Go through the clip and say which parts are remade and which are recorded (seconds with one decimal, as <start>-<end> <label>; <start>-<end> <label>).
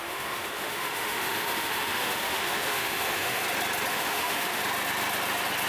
0.0-3.4 remade; 3.4-3.9 recorded; 3.9-4.6 remade; 4.6-5.7 recorded